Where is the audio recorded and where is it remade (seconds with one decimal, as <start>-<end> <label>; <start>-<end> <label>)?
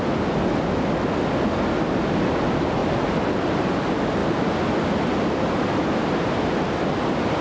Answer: 0.0-7.4 recorded